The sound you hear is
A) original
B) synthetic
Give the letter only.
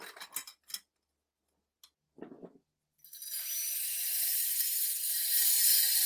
A